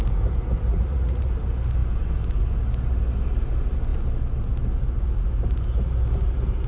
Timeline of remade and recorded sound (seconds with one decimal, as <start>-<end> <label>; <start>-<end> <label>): 0.0-0.7 recorded; 0.7-1.3 remade; 1.3-6.7 recorded